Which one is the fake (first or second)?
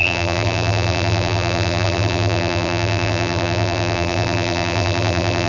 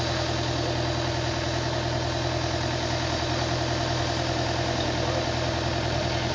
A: first